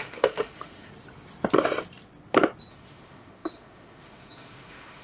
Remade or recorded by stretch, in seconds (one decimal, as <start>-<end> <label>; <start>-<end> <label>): 0.0-0.9 remade; 0.9-2.7 recorded; 2.7-5.0 remade